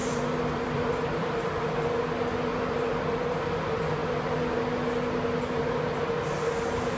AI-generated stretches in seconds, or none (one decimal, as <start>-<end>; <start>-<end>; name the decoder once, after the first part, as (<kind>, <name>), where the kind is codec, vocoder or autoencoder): 0.0-1.5 (vocoder, BigVGAN v2); 2.5-3.4